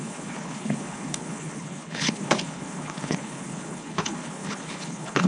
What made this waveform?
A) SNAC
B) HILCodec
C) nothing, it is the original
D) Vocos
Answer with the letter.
B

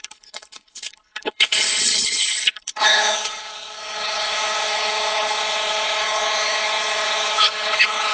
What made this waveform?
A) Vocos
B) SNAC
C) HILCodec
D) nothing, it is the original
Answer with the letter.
C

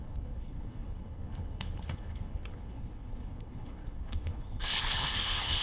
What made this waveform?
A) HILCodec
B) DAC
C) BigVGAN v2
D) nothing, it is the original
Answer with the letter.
A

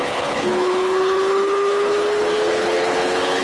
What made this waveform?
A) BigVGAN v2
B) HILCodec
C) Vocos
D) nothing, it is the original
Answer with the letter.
B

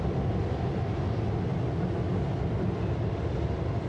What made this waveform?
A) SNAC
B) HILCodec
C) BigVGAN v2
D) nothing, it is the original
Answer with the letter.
D